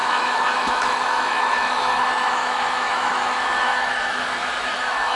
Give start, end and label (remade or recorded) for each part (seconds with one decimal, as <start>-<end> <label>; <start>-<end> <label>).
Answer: 0.0-5.2 remade